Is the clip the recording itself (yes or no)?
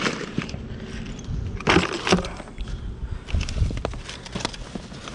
yes